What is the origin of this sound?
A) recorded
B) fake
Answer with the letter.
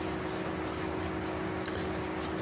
A